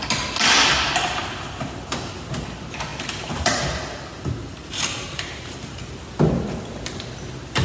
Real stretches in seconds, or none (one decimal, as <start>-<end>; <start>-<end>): 0.0-2.9; 5.8-7.6